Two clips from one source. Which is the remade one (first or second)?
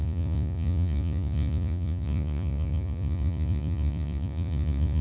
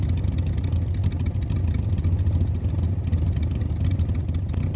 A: first